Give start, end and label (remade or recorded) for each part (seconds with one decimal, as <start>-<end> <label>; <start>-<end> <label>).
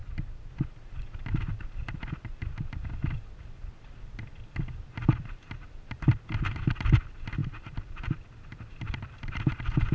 0.0-0.5 remade; 0.5-7.4 recorded; 7.4-9.4 remade; 9.4-9.9 recorded